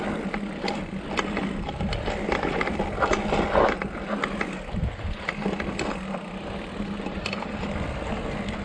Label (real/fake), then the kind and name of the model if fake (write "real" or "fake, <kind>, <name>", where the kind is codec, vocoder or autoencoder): real